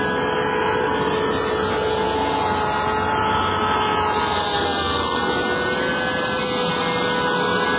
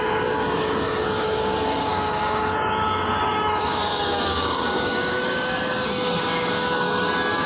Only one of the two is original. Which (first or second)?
first